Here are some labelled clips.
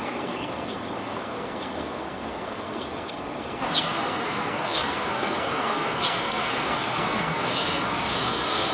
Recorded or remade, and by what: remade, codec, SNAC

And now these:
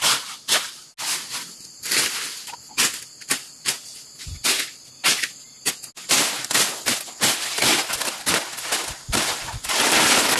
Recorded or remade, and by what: recorded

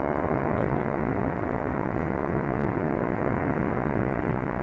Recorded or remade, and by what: remade, vocoder, WaveNeXt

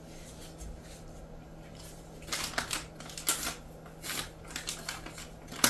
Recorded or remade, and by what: recorded